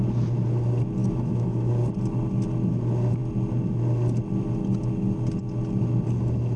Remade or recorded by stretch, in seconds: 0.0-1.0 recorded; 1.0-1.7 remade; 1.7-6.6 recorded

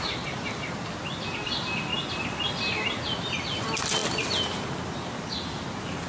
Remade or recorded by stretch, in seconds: 0.0-6.1 recorded

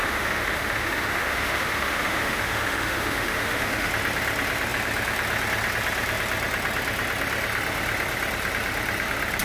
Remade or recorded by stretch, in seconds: 0.0-3.9 remade; 3.9-9.4 recorded

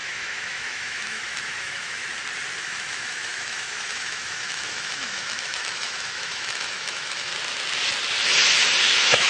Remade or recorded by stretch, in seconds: 0.0-2.0 remade; 2.0-2.6 recorded; 2.6-7.3 remade; 7.3-8.8 recorded; 8.8-9.3 remade

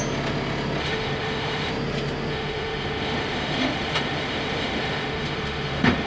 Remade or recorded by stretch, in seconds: 0.0-0.8 recorded; 0.8-1.7 remade; 1.7-2.3 recorded; 2.3-6.1 remade

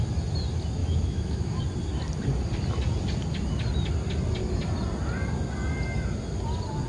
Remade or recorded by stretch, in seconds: 0.0-0.8 recorded; 0.8-1.6 remade; 1.6-6.9 recorded

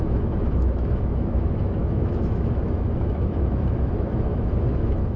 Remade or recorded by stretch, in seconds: 0.0-5.2 remade

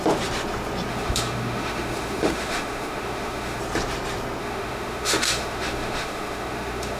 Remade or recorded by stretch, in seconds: 0.0-0.9 recorded; 0.9-3.6 remade; 3.6-4.4 recorded; 4.4-7.0 remade